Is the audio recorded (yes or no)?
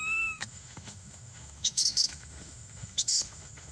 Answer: no